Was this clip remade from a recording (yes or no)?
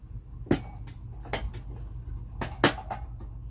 no